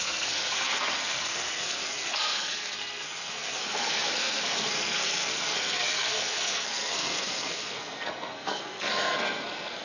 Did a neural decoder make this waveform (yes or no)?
yes